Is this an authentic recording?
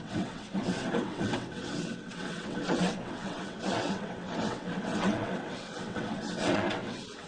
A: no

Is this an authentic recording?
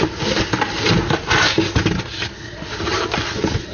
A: yes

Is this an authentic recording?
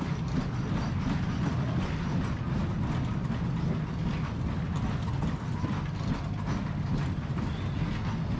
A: yes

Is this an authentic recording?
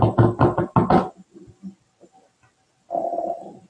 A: yes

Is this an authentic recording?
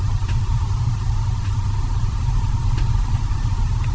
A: yes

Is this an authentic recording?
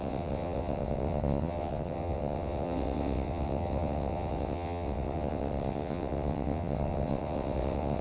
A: no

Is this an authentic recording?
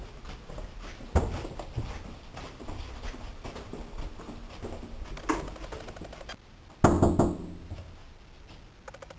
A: yes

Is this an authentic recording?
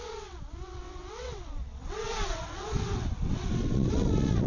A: no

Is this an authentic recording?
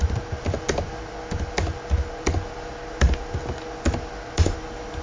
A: yes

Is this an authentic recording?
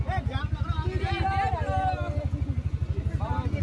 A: yes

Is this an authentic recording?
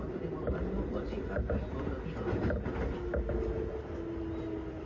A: yes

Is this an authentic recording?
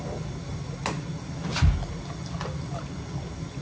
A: yes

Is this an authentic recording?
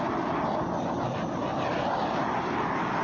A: yes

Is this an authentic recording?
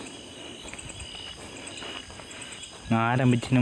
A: yes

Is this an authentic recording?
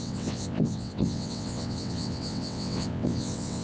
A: no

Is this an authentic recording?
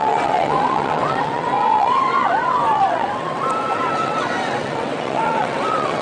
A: no